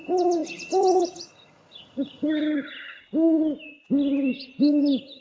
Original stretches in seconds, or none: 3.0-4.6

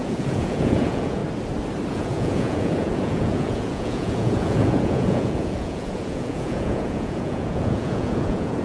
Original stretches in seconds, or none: 1.2-1.9

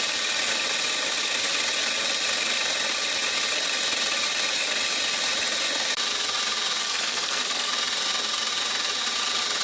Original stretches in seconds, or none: 0.0-6.8; 7.7-9.6